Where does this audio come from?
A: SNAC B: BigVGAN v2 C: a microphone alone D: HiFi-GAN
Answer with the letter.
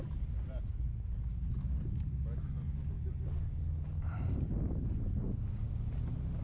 C